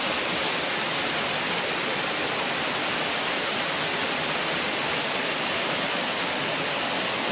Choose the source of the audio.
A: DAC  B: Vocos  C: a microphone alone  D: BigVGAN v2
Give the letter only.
C